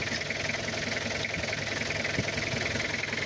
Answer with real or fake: real